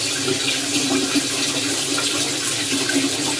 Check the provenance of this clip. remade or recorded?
recorded